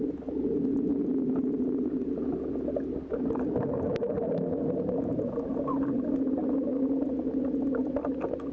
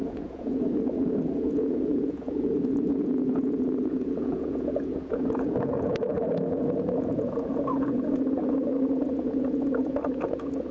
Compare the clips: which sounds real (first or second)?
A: first